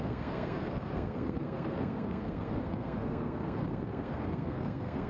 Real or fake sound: fake